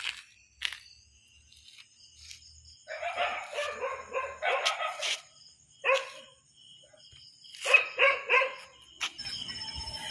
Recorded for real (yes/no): yes